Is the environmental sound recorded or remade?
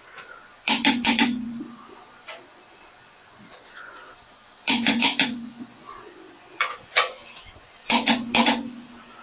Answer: remade